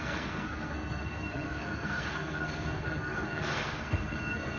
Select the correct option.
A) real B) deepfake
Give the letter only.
B